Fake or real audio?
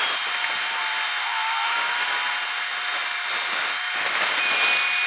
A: real